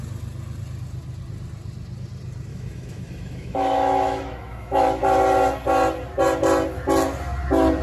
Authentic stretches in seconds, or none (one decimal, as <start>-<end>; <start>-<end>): 0.0-2.5; 5.0-7.8